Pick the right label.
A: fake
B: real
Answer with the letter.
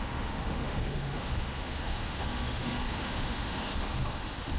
A